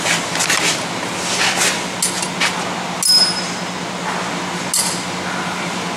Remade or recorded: recorded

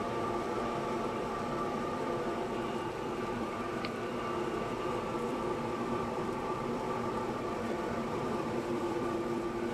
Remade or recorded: remade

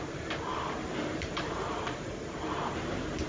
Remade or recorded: remade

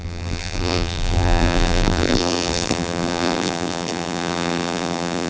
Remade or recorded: remade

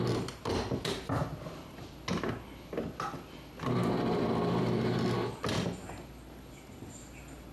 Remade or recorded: recorded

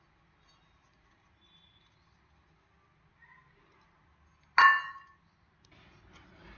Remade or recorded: recorded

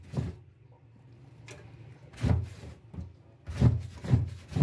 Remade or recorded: recorded